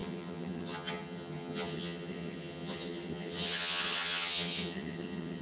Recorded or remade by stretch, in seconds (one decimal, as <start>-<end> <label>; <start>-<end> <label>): 0.0-5.4 remade